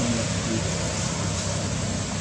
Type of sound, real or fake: real